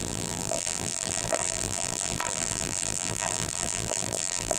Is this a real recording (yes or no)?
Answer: no